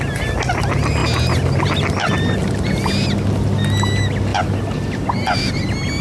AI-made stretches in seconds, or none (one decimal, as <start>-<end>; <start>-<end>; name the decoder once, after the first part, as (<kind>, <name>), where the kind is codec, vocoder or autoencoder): 4.3-5.5 (vocoder, BigVGAN v2)